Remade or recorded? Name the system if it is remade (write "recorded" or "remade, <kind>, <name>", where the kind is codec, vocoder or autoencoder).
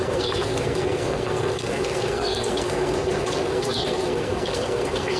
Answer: remade, codec, SNAC